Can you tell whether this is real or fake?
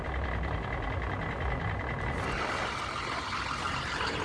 real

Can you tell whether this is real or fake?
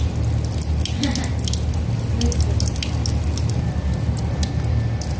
real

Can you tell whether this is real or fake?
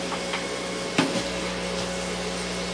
real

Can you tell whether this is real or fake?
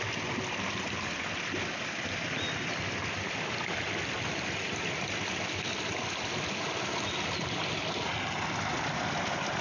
real